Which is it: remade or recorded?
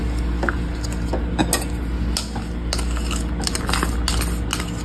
recorded